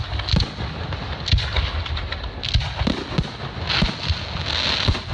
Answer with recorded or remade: recorded